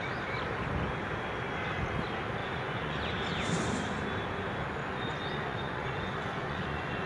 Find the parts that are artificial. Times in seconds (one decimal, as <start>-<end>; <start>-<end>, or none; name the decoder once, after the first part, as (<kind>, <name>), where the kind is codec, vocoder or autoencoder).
2.4-3.1 (vocoder, Vocos); 4.8-7.1